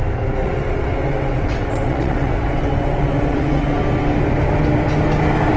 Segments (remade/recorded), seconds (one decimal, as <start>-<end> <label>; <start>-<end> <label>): 0.0-0.4 recorded; 0.4-3.8 remade; 3.8-5.6 recorded